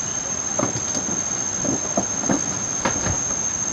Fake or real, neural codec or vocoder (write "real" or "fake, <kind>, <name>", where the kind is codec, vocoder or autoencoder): real